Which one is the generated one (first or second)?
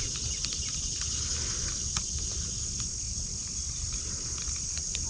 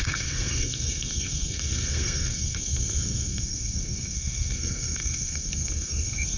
second